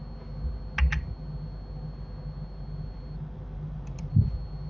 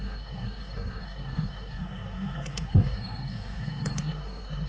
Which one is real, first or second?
first